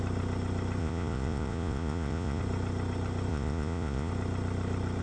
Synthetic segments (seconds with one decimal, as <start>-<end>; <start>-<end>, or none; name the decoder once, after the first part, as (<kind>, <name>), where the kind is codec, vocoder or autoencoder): 0.8-2.4 (vocoder, Vocos); 3.3-4.1